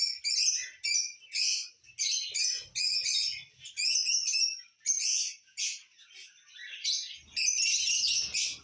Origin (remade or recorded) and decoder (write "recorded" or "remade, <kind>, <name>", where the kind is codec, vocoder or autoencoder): recorded